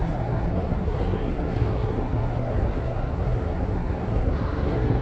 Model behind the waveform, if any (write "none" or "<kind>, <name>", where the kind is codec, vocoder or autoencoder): codec, SNAC